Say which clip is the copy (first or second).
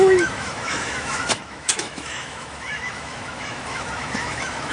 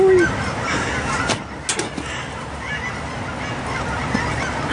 first